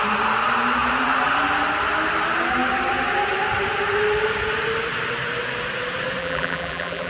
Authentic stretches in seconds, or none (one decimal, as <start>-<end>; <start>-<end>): 0.0-6.2